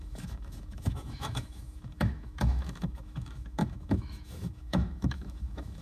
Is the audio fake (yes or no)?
yes